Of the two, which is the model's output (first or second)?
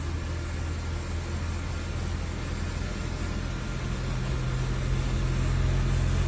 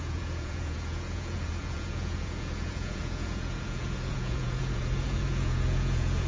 second